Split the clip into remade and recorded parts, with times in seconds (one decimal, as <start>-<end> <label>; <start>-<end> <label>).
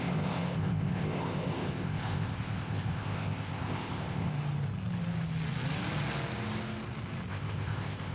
0.0-4.3 remade; 4.3-7.3 recorded; 7.3-8.1 remade